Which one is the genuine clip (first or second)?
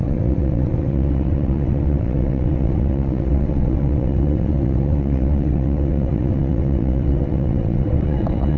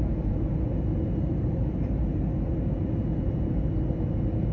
second